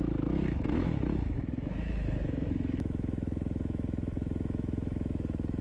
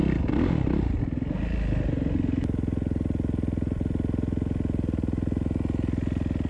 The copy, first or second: first